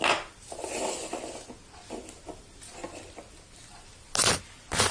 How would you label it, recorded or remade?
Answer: recorded